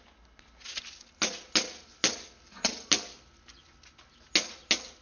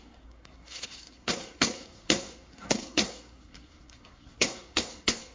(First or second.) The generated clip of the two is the second